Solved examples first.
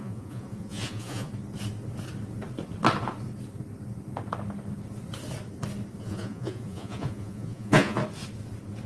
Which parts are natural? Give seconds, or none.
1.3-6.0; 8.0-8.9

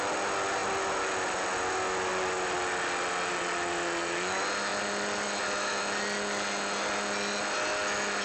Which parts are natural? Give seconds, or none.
0.0-8.2

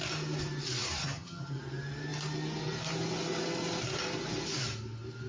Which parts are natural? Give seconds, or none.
0.0-1.0; 1.6-5.3